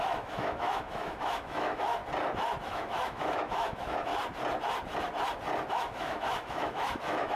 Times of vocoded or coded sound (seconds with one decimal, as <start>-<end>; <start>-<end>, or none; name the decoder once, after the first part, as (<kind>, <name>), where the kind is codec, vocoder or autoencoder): 0.0-2.0 (autoencoder, DAC-VAE); 2.6-4.1; 5.7-7.4